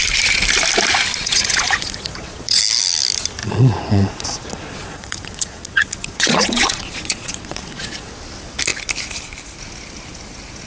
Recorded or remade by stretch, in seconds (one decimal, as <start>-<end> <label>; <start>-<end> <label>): 0.0-1.2 recorded; 1.2-2.6 remade; 2.6-3.4 recorded; 3.4-8.1 remade; 8.1-10.7 recorded